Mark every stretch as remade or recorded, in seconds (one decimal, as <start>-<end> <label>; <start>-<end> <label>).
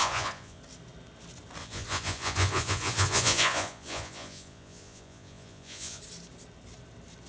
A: 0.0-0.6 remade; 0.6-1.6 recorded; 1.6-6.0 remade; 6.0-7.3 recorded